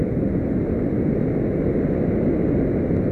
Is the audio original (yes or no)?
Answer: yes